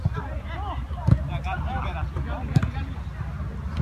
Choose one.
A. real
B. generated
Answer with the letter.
A